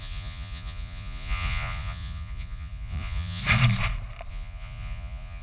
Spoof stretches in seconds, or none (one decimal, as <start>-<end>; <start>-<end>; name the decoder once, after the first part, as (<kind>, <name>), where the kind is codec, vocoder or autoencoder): 0.0-3.4 (vocoder, Vocos); 4.3-5.4